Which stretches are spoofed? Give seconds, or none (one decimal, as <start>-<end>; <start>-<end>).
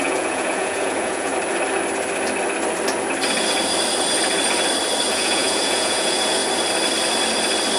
0.0-1.3; 5.1-6.4